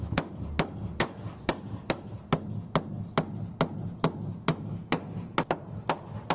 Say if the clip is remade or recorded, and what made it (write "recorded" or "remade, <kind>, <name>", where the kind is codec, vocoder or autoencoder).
recorded